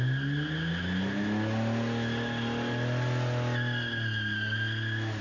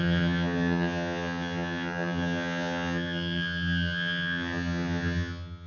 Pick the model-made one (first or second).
second